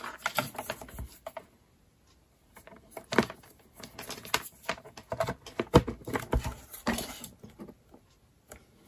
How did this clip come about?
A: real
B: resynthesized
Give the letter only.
A